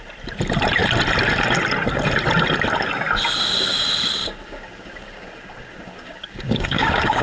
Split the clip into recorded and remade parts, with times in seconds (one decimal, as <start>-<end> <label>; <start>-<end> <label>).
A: 0.0-4.2 recorded; 4.2-7.2 remade